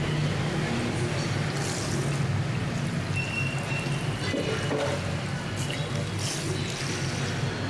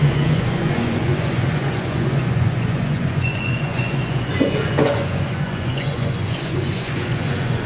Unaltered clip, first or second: first